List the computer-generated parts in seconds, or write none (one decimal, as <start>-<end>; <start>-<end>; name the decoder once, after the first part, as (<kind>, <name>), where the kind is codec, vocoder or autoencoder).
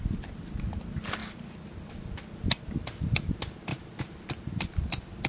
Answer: none